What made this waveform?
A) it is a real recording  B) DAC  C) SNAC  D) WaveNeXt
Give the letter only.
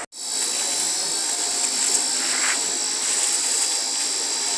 A